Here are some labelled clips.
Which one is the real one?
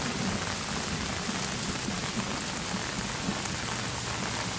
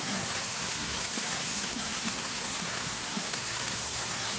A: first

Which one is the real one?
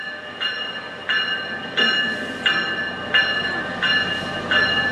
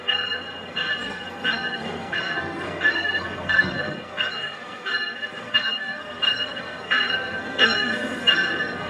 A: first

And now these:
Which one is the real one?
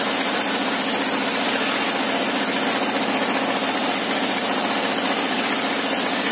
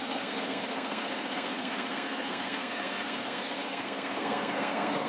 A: first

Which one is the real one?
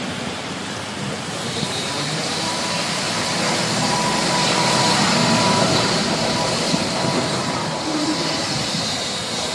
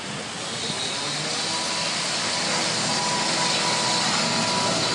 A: second